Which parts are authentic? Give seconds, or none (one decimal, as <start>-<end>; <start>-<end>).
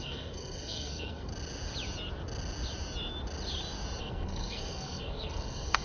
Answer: 1.3-4.0